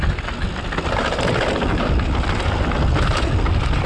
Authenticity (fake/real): real